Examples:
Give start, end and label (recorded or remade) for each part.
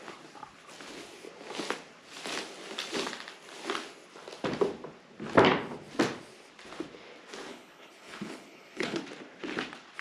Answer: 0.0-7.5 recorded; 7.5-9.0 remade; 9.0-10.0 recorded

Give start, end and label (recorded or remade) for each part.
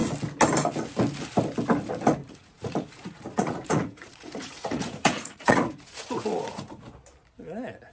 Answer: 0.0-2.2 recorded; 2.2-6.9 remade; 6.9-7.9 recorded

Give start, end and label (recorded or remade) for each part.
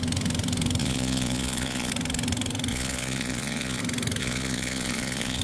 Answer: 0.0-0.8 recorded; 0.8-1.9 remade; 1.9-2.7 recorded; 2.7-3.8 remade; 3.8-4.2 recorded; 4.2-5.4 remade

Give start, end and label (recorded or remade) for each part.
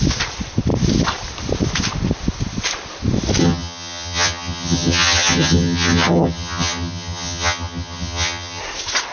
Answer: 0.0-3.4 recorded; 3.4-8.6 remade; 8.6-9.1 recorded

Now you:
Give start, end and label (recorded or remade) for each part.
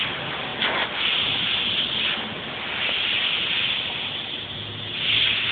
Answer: 0.0-5.5 recorded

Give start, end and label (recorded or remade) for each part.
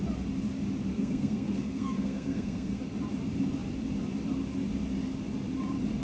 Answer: 0.0-0.9 recorded; 0.9-2.8 remade; 2.8-6.0 recorded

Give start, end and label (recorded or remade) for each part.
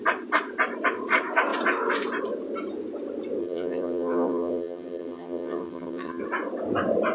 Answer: 0.0-3.4 recorded; 3.4-6.2 remade; 6.2-7.1 recorded